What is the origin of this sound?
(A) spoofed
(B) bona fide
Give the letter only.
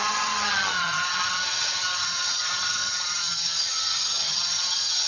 A